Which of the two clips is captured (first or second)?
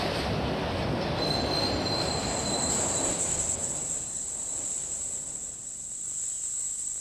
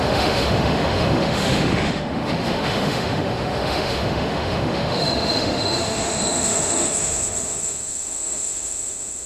first